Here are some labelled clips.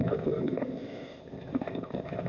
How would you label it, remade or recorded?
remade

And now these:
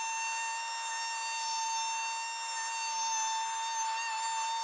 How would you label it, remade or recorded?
recorded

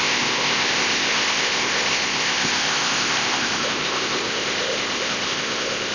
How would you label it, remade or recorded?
remade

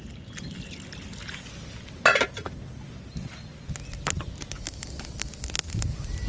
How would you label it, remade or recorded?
recorded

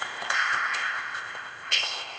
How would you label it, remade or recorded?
remade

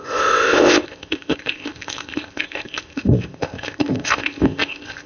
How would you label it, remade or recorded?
remade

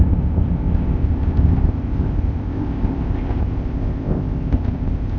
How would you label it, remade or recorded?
remade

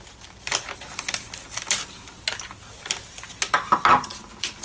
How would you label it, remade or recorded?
recorded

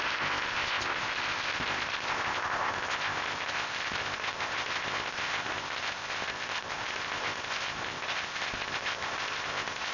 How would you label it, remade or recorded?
remade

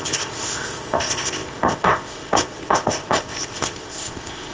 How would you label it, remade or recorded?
remade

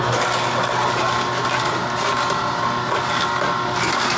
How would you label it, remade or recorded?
recorded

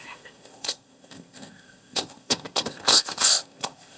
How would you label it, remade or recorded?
remade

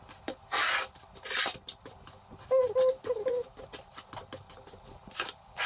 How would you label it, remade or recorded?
recorded